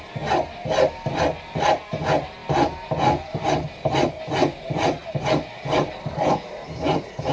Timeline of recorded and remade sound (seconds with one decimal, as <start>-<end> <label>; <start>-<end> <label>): 0.0-7.3 recorded